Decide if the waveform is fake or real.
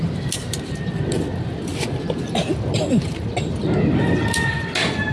real